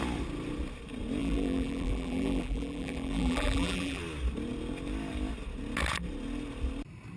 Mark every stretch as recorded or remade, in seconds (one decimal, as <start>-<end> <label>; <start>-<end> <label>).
0.0-1.2 recorded; 1.2-4.0 remade; 4.0-7.2 recorded